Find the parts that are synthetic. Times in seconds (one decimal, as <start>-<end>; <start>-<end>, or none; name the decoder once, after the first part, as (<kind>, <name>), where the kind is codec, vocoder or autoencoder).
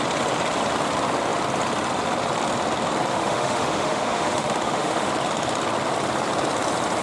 3.1-5.1 (autoencoder, DAC-VAE)